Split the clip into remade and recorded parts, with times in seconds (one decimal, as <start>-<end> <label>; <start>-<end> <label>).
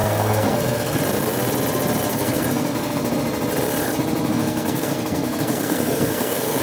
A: 0.0-1.0 remade; 1.0-2.1 recorded; 2.1-3.1 remade; 3.1-4.3 recorded; 4.3-6.6 remade